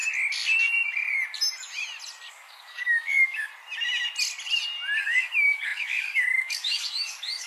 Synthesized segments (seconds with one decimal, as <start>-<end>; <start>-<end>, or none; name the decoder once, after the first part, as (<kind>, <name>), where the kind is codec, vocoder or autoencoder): 2.3-3.5 (codec, DAC); 5.0-7.5